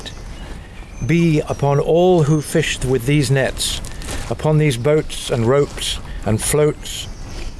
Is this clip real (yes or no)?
yes